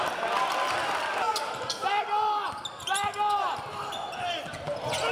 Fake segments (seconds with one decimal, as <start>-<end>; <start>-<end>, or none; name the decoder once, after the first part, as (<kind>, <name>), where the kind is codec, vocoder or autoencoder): 1.3-1.9 (vocoder, BigVGAN v2)